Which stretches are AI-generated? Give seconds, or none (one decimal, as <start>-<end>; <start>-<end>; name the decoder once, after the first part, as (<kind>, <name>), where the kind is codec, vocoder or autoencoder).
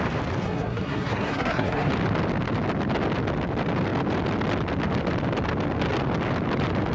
0.4-1.9 (codec, SNAC)